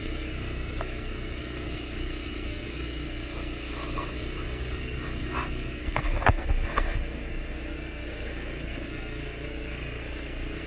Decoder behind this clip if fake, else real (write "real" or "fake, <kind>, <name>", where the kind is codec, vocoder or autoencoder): fake, codec, SNAC